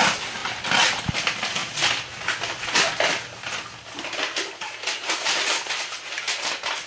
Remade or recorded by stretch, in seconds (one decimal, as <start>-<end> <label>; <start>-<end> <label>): 0.0-6.9 recorded